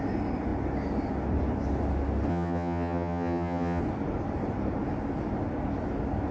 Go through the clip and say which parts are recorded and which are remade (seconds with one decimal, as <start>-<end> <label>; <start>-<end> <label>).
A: 0.0-2.3 recorded; 2.3-3.8 remade; 3.8-6.3 recorded